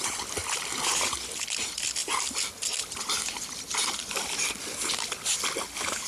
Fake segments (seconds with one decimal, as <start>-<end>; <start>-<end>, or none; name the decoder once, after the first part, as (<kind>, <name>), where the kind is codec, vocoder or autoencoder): none